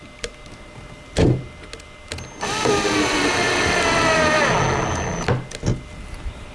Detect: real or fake real